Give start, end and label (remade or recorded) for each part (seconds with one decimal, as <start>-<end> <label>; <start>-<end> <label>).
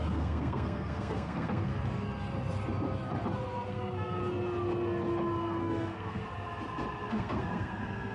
0.0-1.7 remade; 1.7-3.7 recorded; 3.7-4.2 remade; 4.2-5.6 recorded; 5.6-6.2 remade; 6.2-7.1 recorded; 7.1-8.1 remade